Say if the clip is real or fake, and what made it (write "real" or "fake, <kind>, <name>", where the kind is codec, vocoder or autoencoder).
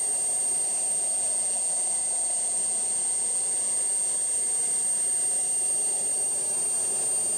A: real